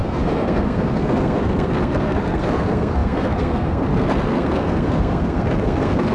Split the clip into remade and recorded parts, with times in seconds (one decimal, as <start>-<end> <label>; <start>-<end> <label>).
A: 0.0-6.1 remade